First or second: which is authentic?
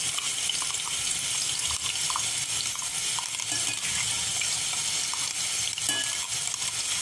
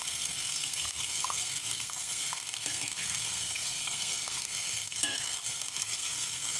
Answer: first